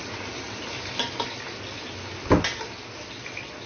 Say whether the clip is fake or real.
real